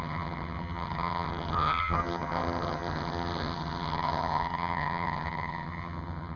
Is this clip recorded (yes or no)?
no